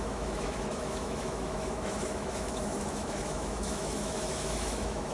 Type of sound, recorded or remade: remade